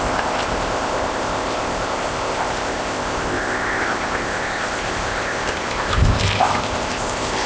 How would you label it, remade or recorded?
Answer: remade